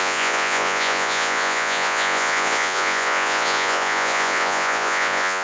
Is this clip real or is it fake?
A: fake